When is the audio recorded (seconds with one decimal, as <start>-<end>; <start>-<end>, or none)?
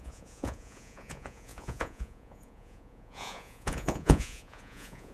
none